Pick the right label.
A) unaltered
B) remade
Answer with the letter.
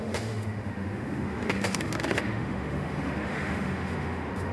B